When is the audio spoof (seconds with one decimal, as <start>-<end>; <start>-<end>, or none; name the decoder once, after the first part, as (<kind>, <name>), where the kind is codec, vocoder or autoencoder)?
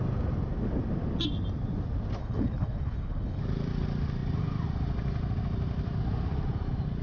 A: 2.2-3.4 (codec, HILCodec)